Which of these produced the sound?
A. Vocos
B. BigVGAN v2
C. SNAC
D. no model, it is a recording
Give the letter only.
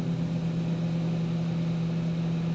D